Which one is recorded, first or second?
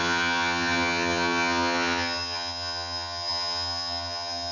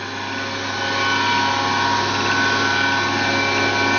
second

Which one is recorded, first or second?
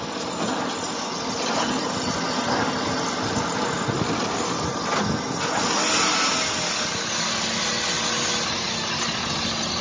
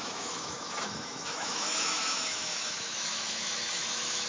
first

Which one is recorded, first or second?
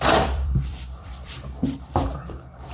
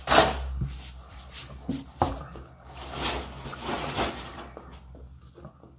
second